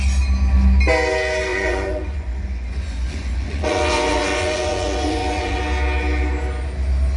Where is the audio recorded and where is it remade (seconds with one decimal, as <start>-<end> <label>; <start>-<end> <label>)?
0.0-1.5 recorded; 1.5-5.6 remade; 5.6-7.2 recorded